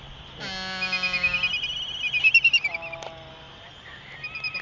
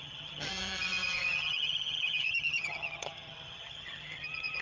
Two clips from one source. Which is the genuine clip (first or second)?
first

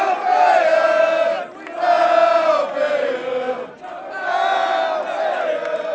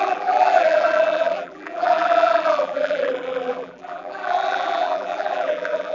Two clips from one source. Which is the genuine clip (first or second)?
first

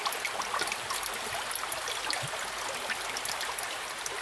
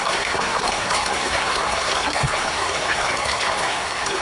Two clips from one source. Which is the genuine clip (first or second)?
first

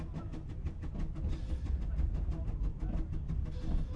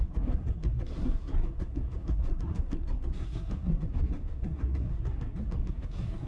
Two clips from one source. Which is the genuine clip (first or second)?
first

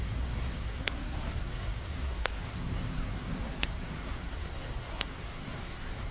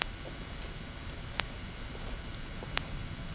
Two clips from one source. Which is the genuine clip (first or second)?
second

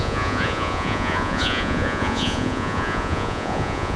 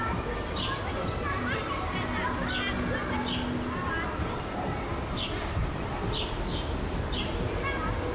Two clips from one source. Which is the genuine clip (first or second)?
second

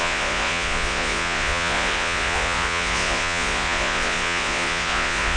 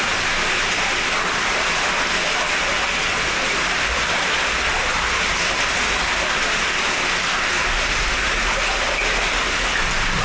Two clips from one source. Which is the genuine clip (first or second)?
second